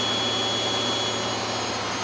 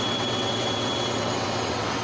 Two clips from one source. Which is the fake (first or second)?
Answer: second